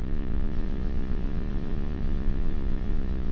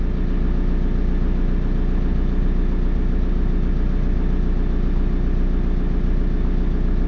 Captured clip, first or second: second